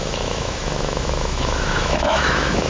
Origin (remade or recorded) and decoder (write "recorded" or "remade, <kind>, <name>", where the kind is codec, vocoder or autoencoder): remade, autoencoder, DAC-VAE